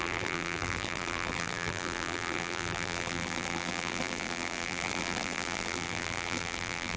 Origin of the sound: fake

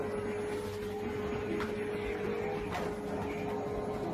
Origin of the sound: real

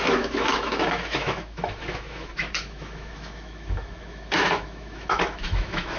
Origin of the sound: fake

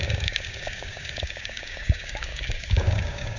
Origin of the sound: fake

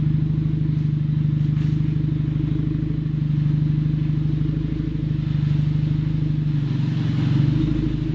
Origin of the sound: real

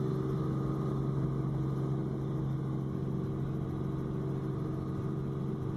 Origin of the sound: real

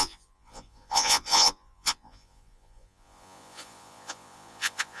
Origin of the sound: fake